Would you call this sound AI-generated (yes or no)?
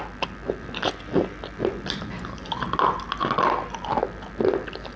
yes